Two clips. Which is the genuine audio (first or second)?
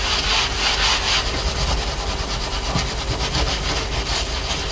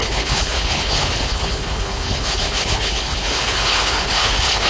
first